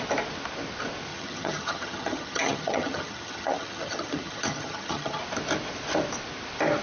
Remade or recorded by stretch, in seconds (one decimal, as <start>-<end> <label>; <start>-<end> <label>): 0.0-1.1 recorded; 1.1-5.2 remade; 5.2-6.8 recorded